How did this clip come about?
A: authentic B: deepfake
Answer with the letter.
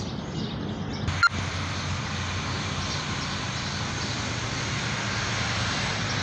A